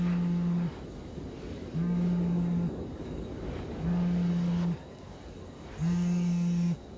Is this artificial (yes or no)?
yes